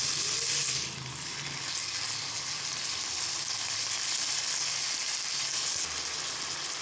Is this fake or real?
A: real